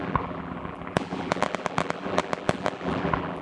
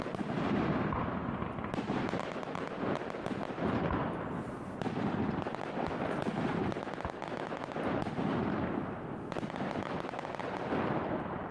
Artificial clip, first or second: first